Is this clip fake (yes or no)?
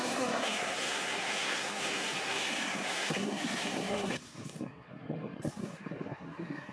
yes